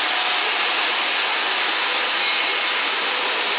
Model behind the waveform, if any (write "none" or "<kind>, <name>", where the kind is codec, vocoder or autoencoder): none